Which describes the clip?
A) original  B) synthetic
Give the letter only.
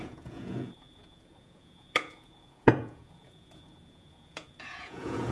B